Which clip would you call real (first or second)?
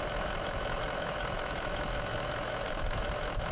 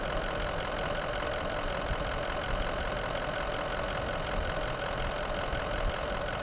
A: second